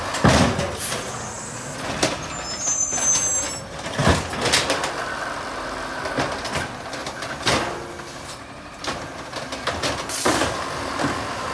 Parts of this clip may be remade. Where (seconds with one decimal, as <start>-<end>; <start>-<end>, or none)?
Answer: 7.0-7.7